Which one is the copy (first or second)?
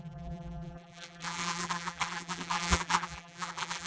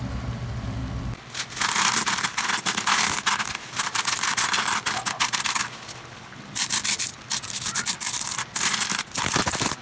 first